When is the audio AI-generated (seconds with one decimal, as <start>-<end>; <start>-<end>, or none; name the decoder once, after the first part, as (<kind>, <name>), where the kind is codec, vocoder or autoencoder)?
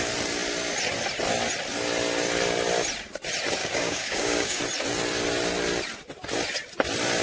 3.6-4.6 (codec, DAC)